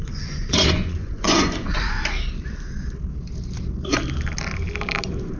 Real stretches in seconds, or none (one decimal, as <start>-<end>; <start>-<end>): 2.0-5.4